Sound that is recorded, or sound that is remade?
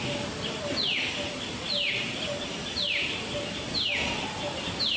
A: recorded